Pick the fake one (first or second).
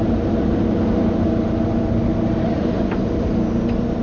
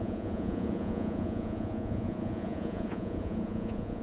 second